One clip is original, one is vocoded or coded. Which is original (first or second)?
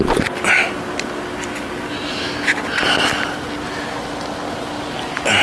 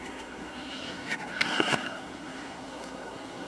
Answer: first